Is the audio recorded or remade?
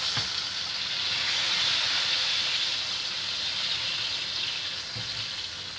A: recorded